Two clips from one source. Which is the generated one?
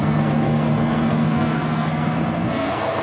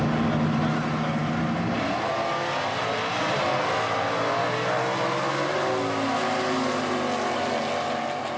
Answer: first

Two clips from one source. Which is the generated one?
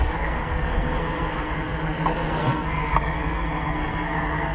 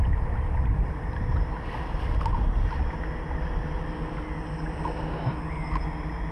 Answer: first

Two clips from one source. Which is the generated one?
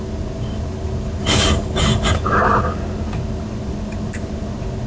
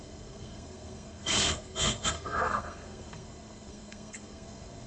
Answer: second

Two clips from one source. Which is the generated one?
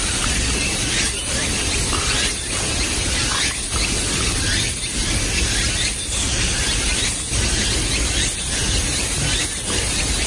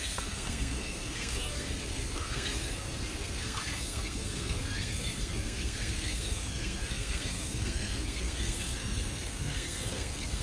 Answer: second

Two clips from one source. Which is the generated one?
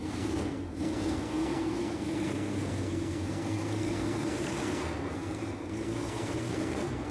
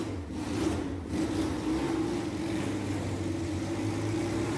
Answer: first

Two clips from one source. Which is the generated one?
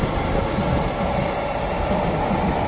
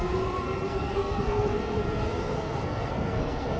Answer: second